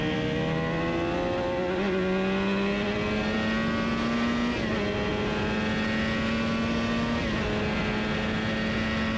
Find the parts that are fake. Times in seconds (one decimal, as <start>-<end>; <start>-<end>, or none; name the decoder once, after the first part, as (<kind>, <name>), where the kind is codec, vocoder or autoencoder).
none